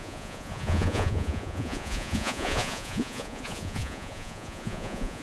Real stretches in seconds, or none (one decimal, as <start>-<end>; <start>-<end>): none